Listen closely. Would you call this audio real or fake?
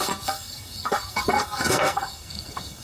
fake